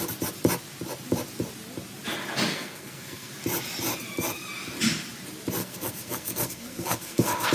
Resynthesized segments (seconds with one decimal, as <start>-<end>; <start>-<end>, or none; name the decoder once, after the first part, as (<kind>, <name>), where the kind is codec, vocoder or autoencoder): 2.5-3.3 (codec, SNAC); 5.6-7.5